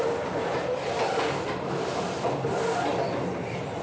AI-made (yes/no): yes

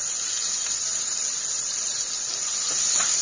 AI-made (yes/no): no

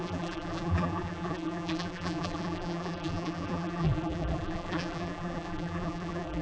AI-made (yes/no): yes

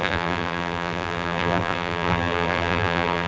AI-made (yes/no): yes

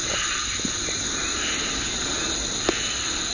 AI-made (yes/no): no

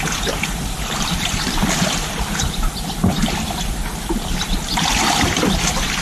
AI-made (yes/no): no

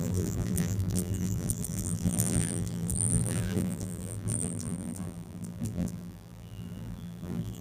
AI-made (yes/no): yes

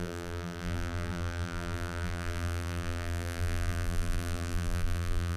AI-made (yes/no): yes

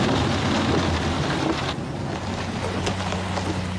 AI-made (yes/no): no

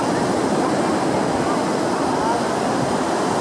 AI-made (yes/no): no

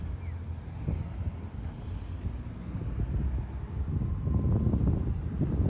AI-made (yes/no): no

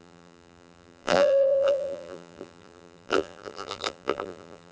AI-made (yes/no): yes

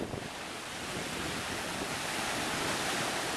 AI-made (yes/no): yes